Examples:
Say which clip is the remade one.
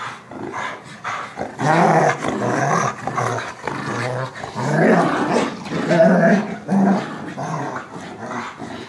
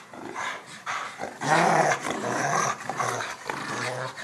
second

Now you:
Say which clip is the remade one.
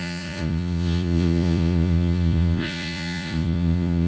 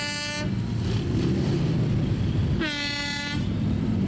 first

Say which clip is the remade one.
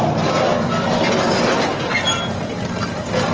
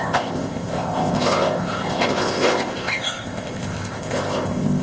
second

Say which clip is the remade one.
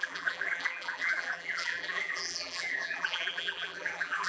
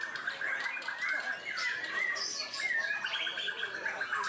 first